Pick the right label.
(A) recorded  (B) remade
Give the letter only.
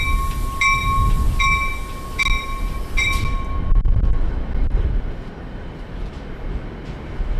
A